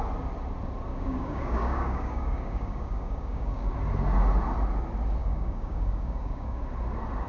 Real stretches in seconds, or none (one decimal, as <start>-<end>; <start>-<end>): 0.0-0.9; 3.7-5.2; 6.6-7.3